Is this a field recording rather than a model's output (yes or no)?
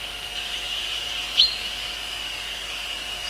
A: no